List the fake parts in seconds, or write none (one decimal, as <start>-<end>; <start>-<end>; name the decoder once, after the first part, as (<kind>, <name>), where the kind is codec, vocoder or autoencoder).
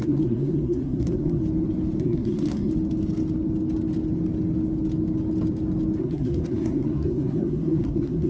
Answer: 0.0-1.4 (codec, SNAC); 2.0-2.7; 6.0-8.3